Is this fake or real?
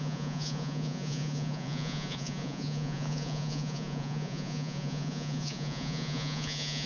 fake